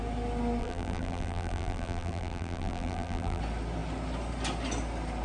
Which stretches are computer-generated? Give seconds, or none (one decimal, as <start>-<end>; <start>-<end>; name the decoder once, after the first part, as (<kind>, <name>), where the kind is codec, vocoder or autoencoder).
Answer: 0.6-3.4 (vocoder, BigVGAN v2)